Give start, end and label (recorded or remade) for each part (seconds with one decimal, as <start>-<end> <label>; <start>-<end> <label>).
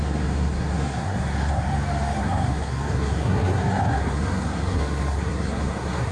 0.0-1.7 remade; 1.7-2.2 recorded; 2.2-6.1 remade